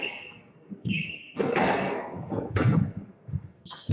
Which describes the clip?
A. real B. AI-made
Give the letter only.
B